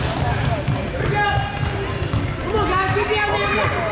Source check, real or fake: real